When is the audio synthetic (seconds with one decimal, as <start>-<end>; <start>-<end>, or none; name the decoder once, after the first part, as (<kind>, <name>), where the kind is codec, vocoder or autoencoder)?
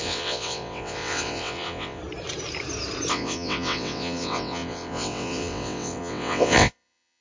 0.0-2.0 (vocoder, WaveNeXt); 3.1-7.2